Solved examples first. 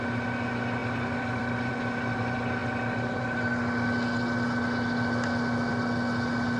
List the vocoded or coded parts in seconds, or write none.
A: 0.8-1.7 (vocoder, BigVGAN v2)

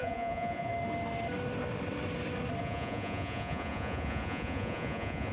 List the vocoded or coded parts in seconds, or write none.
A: 0.0-0.7 (vocoder, Vocos); 2.6-5.3

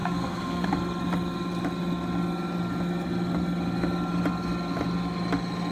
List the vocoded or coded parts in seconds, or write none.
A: 0.0-0.7 (codec, SNAC)

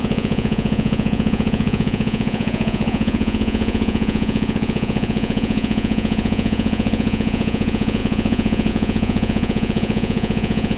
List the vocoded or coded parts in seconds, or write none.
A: 0.0-10.8 (vocoder, Vocos)

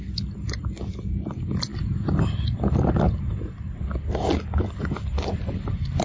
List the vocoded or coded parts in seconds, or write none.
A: none

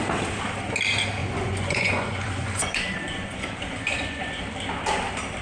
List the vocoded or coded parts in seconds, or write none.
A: 1.2-4.4 (vocoder, Vocos)